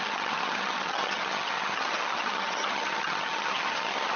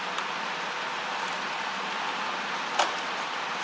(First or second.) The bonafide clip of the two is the second